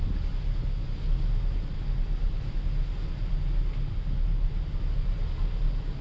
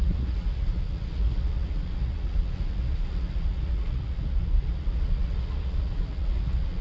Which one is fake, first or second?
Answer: second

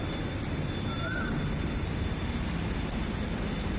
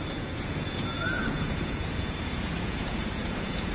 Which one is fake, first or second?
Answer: second